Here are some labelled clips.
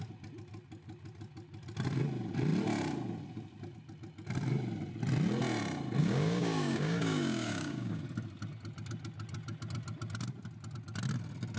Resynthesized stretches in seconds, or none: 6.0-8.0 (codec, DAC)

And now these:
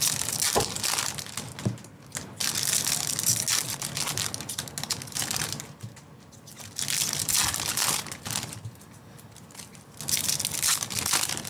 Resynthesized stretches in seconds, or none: none